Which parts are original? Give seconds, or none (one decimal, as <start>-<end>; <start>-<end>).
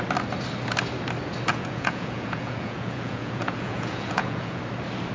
0.0-1.5; 4.6-5.1